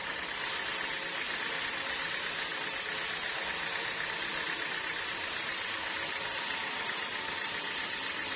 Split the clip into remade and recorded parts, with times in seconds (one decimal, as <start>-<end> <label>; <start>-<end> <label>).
0.0-8.4 recorded